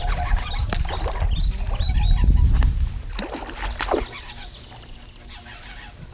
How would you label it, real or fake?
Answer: real